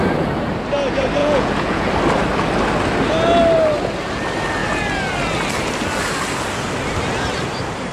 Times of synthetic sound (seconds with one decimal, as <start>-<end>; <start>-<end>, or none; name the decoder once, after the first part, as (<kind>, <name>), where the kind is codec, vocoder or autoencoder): 1.2-1.9 (vocoder, Vocos)